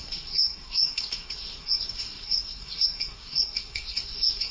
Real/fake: fake